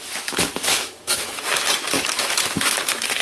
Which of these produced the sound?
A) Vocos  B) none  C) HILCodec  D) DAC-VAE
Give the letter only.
D